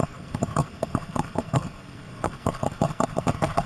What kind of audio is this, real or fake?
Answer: fake